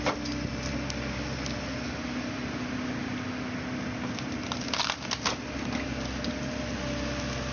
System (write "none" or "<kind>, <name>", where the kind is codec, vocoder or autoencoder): none